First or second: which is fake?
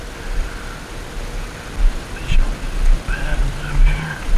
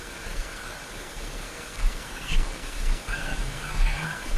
second